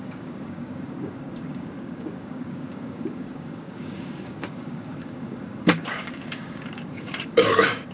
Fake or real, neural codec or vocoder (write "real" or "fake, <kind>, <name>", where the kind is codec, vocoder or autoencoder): fake, codec, DAC